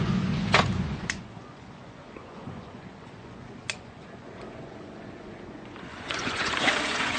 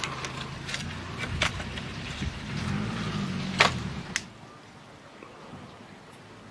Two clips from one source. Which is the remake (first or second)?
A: first